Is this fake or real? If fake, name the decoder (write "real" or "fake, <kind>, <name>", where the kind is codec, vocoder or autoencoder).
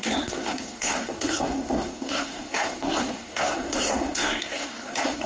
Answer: fake, codec, SNAC